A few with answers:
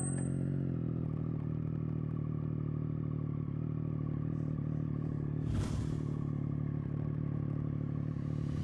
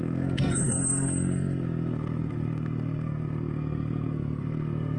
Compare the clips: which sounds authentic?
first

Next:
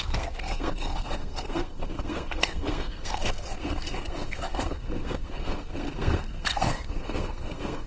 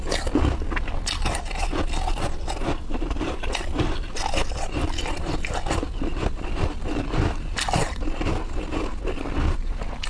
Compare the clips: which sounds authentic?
second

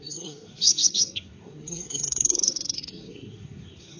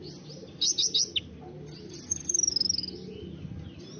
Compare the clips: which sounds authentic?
second